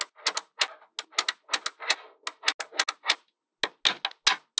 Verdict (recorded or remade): recorded